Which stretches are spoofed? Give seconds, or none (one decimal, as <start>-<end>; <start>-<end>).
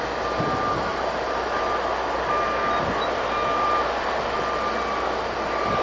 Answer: none